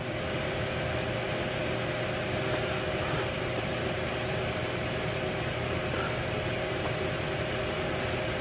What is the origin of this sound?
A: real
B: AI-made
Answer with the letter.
A